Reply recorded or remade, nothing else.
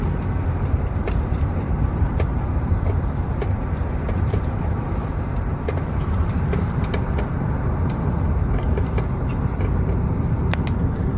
remade